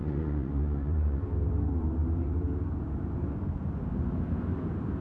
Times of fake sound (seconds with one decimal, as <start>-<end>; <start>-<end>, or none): 0.0-1.2